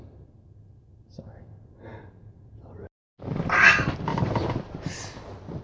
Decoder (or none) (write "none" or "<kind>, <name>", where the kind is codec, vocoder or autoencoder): none